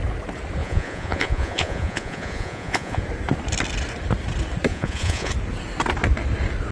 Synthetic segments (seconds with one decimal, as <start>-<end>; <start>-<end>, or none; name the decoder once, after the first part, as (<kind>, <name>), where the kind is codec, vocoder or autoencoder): 0.6-3.0 (vocoder, Vocos); 4.7-5.3